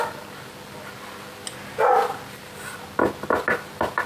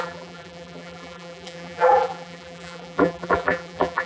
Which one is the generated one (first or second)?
second